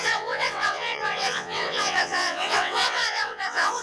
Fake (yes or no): yes